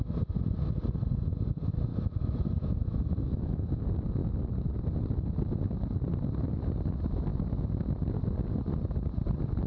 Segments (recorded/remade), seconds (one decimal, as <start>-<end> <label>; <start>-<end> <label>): 0.0-1.9 recorded; 1.9-3.8 remade; 3.8-9.7 recorded